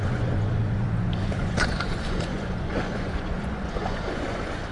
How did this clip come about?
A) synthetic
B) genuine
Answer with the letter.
A